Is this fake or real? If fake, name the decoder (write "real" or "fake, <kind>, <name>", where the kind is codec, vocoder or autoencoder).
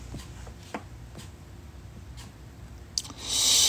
real